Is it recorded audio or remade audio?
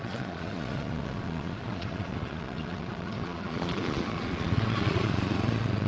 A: remade